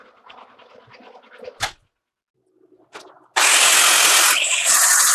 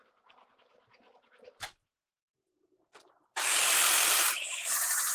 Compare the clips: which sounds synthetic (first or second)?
second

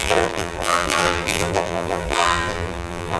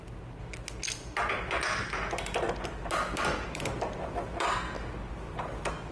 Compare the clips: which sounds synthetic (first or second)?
first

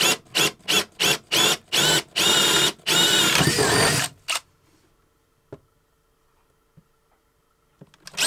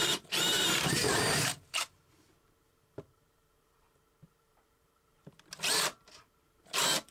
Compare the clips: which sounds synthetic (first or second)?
second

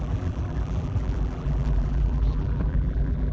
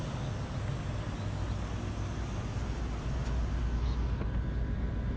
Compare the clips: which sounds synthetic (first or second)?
first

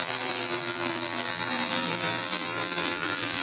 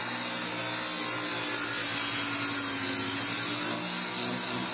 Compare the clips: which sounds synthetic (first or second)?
first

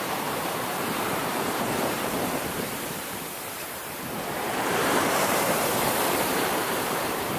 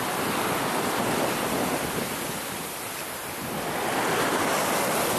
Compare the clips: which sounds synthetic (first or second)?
first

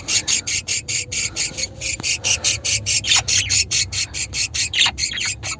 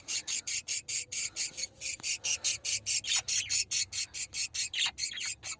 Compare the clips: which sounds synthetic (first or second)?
first